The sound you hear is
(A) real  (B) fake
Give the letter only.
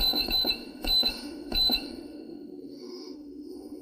B